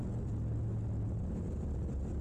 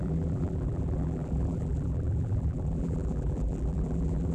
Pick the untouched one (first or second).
first